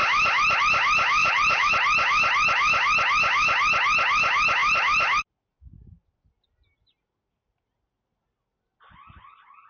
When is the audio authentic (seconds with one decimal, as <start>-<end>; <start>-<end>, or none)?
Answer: 0.0-1.2; 1.7-9.7